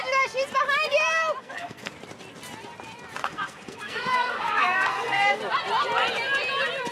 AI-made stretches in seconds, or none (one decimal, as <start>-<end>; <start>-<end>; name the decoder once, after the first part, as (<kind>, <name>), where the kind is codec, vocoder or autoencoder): 1.4-1.9 (codec, SNAC); 3.2-5.4